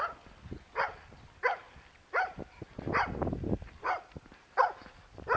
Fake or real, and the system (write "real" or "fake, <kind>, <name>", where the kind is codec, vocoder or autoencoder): real